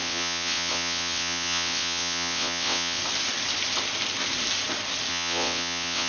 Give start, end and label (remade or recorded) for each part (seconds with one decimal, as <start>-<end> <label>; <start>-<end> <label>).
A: 0.0-3.0 remade; 3.0-5.1 recorded; 5.1-6.1 remade